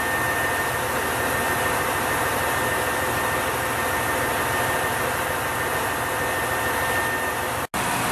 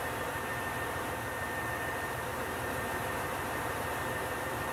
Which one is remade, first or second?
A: second